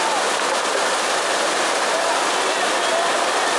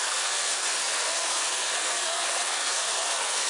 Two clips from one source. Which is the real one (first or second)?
first